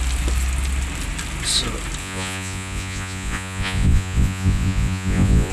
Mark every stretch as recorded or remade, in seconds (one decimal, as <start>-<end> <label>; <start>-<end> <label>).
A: 0.0-2.0 recorded; 2.0-5.5 remade